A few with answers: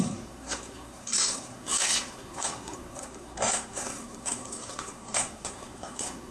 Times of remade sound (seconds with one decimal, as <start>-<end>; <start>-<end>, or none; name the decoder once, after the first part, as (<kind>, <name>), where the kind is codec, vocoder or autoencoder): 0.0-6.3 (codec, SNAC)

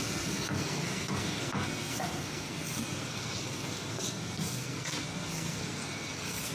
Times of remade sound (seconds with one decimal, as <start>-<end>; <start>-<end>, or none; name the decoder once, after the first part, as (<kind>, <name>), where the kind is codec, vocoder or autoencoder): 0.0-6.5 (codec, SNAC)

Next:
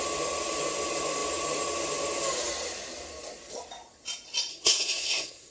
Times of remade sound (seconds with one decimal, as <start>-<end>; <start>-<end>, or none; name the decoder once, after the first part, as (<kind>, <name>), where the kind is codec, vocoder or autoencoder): 4.5-5.5 (codec, SNAC)